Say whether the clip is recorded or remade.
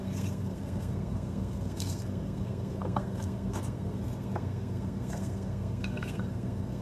remade